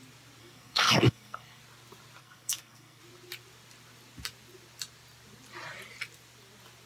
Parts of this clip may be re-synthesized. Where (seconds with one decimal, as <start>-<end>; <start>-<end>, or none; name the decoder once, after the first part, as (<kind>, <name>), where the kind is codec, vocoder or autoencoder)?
0.4-1.6 (codec, SNAC); 2.2-3.0